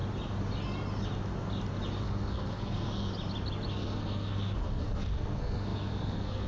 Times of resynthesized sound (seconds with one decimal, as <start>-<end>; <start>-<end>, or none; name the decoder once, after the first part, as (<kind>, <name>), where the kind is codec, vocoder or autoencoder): 2.0-3.1 (codec, SNAC); 3.7-6.5